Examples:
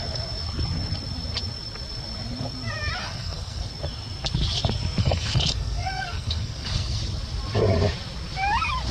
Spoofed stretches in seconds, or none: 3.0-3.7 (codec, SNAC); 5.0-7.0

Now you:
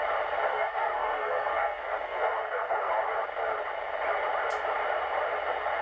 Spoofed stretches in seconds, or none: 0.5-2.9 (codec, SNAC)

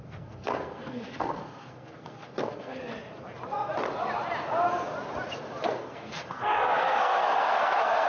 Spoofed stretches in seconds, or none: 0.0-2.8 (codec, SNAC); 5.6-8.1

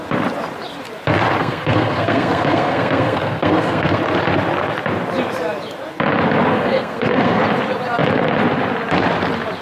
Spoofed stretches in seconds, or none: 1.4-4.0 (codec, SNAC); 6.5-7.4

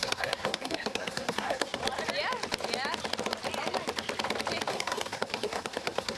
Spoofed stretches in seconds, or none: 0.0-1.8 (codec, SNAC); 4.7-6.2

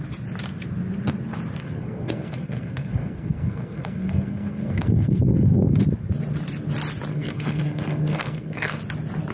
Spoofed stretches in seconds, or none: 1.6-5.8 (codec, SNAC); 7.1-8.8

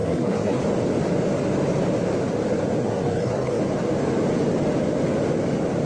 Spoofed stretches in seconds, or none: 0.0-0.6 (codec, SNAC); 2.8-3.6